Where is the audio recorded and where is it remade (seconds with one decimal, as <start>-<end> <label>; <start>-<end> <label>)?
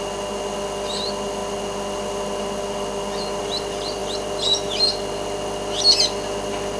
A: 0.0-6.8 recorded